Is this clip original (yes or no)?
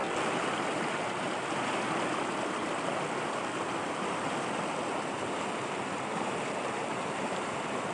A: yes